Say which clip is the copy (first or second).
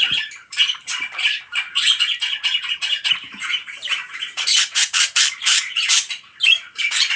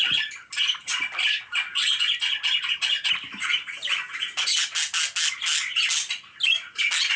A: first